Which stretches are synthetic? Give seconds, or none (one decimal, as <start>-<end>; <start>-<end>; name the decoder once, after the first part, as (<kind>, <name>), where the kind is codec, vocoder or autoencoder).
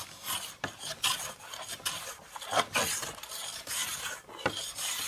none